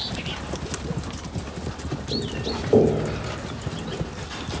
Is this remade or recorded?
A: recorded